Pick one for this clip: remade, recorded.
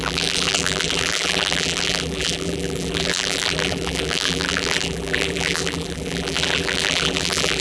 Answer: remade